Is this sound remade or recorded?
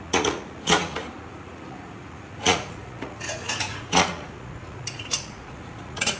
remade